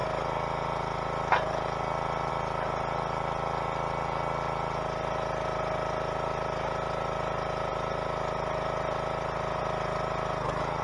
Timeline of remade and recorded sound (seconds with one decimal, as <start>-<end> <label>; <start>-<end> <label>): 0.0-10.8 recorded